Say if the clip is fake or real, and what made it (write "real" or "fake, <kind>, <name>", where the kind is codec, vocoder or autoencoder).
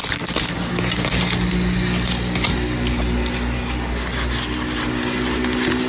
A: real